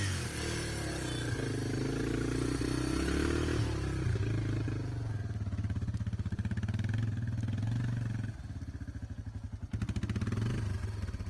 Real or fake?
real